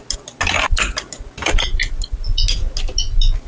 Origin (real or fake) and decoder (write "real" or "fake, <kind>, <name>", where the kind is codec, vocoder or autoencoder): real